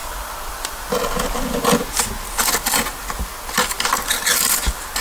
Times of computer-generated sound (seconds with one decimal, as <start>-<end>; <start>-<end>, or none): none